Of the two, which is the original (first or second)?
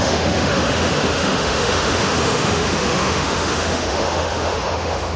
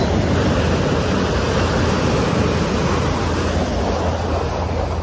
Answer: second